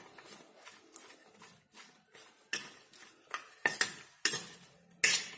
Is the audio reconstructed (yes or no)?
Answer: no